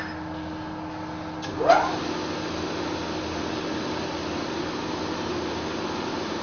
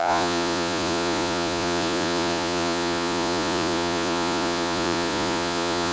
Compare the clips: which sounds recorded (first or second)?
first